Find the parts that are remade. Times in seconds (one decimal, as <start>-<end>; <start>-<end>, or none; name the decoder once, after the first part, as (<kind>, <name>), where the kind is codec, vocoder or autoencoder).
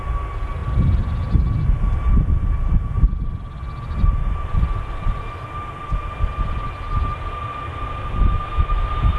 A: none